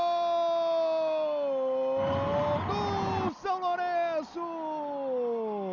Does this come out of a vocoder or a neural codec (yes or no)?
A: no